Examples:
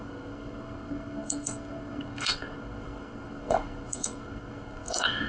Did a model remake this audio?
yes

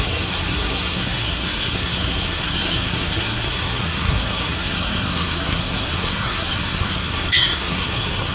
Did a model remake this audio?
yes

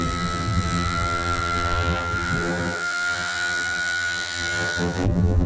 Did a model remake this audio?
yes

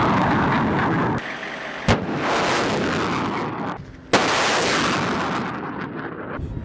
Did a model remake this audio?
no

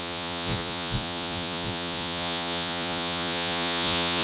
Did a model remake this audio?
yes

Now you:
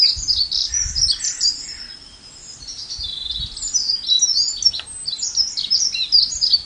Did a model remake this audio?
no